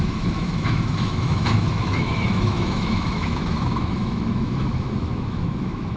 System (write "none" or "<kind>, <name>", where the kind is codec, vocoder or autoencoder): autoencoder, DAC-VAE